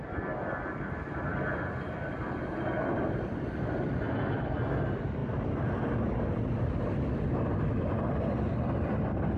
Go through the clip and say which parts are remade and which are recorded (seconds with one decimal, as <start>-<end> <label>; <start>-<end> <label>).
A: 0.0-1.3 recorded; 1.3-4.5 remade; 4.5-5.2 recorded; 5.2-7.9 remade; 7.9-9.4 recorded